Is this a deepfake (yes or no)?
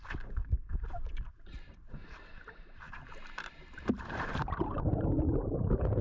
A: yes